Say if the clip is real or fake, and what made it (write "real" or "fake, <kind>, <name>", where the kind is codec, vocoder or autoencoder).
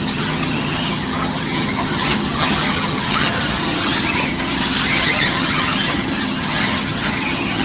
fake, vocoder, HiFi-GAN